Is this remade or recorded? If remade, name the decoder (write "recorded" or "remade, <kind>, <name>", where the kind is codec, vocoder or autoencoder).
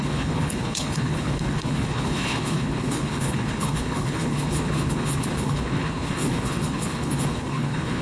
remade, codec, HILCodec